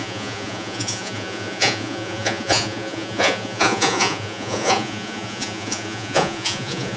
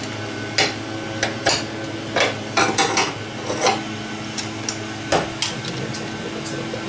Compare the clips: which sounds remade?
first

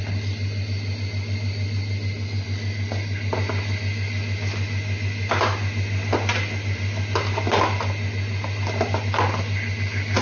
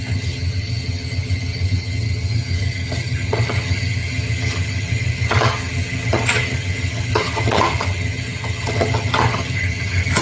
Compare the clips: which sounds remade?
second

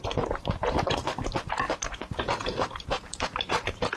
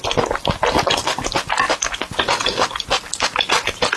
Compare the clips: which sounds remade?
first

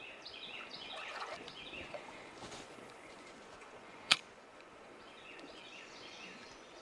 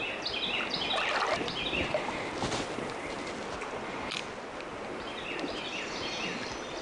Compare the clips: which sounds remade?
first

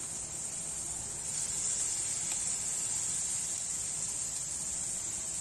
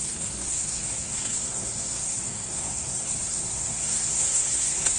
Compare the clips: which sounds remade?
second